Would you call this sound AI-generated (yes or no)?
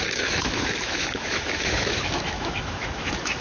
yes